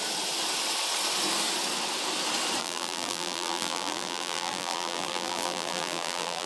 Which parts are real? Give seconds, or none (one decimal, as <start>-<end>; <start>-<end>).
0.0-2.6